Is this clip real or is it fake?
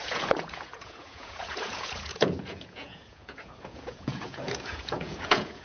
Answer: fake